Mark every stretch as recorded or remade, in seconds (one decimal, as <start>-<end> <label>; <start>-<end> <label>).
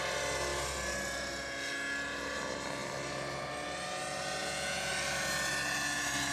0.0-4.4 recorded; 4.4-4.9 remade; 4.9-6.3 recorded